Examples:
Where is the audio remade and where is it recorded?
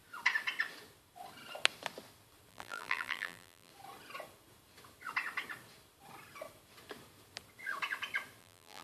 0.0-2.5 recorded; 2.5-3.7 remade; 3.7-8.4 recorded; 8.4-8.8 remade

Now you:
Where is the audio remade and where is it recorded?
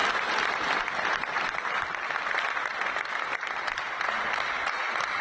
0.0-5.2 recorded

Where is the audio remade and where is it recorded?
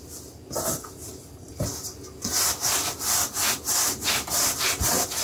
0.0-5.2 recorded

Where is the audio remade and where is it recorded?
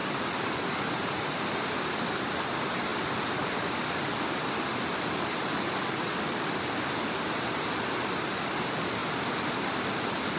0.0-9.0 remade; 9.0-10.4 recorded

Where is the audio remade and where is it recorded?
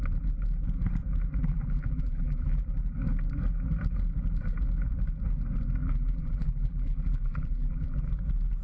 0.0-1.4 recorded; 1.4-2.6 remade; 2.6-5.8 recorded; 5.8-8.1 remade; 8.1-8.6 recorded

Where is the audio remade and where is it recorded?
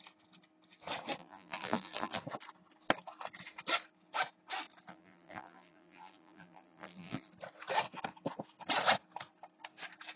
0.0-1.2 recorded; 1.2-2.2 remade; 2.2-4.9 recorded; 4.9-7.3 remade; 7.3-10.2 recorded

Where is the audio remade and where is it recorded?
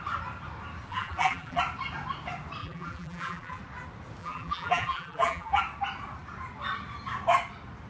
0.0-0.9 recorded; 0.9-1.6 remade; 1.6-2.6 recorded; 2.6-3.6 remade; 3.6-4.2 recorded; 4.2-5.6 remade; 5.6-7.9 recorded